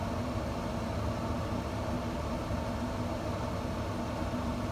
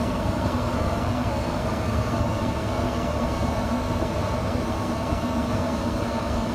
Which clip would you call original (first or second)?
first